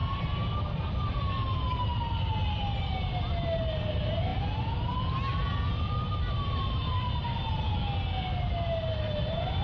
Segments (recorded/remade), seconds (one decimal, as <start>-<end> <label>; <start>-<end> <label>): 0.0-9.6 recorded